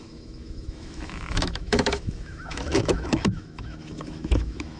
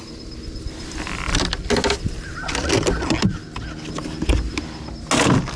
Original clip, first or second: second